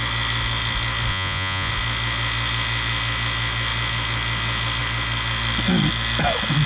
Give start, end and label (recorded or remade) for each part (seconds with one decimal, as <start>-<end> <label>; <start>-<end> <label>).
0.0-1.1 recorded; 1.1-1.7 remade; 1.7-6.7 recorded